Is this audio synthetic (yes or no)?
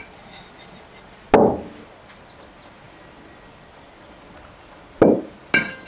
no